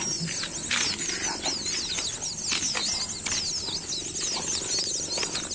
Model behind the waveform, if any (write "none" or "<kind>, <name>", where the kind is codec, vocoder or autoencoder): none